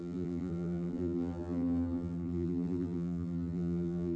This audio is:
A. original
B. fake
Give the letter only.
B